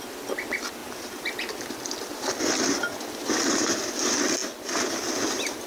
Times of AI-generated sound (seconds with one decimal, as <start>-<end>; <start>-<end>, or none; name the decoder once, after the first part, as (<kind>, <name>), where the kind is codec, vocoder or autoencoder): none